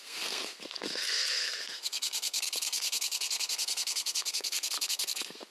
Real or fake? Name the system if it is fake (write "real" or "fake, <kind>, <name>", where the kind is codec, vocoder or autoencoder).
fake, codec, SNAC